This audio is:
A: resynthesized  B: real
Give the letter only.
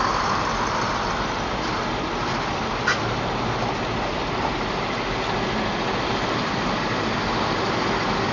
B